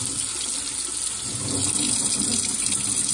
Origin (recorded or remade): recorded